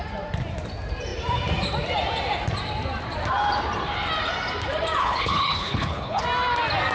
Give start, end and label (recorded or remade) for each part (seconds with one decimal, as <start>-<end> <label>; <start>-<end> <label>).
0.0-5.0 recorded; 5.0-6.2 remade; 6.2-6.9 recorded